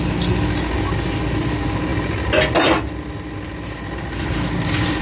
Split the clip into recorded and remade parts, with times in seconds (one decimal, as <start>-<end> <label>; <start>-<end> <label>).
0.0-5.0 recorded